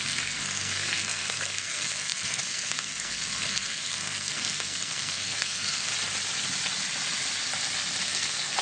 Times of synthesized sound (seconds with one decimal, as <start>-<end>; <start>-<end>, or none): 0.0-5.9; 8.0-8.6